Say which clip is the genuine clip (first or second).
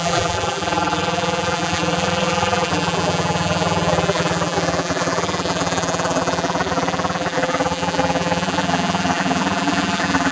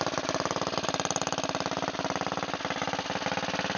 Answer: second